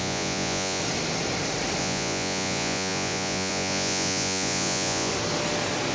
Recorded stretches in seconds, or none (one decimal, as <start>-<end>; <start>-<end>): 0.8-1.8; 5.1-5.9

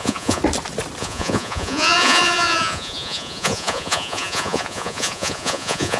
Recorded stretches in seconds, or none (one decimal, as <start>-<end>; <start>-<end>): 0.4-1.0

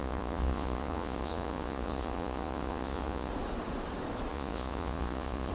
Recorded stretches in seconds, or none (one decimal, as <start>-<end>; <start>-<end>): 3.3-4.3

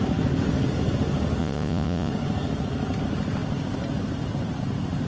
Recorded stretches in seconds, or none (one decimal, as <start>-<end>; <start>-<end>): 0.0-1.4; 2.1-5.1

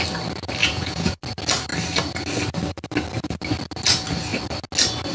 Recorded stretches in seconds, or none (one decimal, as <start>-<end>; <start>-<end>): 0.0-0.6; 1.2-5.1

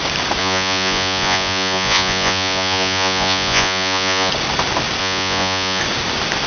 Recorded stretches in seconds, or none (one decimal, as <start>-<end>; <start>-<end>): 0.0-0.4; 4.3-5.0; 5.8-6.5